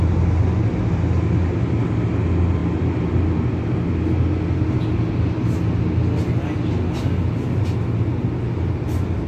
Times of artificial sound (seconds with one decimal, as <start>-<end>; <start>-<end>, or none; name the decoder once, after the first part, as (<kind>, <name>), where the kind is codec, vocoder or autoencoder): none